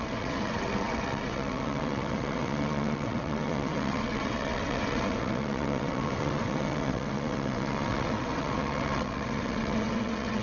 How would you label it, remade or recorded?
remade